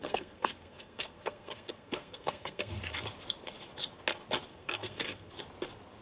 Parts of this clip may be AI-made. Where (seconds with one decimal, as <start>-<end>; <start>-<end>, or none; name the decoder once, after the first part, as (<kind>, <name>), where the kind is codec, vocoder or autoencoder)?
0.0-2.7 (codec, SNAC); 4.5-5.3